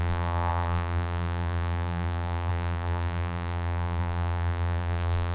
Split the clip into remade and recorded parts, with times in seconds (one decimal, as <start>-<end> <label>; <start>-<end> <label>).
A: 0.0-5.3 remade